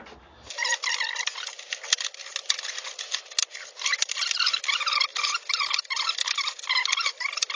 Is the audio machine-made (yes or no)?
no